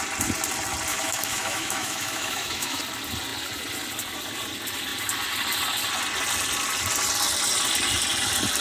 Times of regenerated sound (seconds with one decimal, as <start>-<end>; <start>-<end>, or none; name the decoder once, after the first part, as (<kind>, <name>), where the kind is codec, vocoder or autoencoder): 0.9-2.8 (autoencoder, DAC-VAE)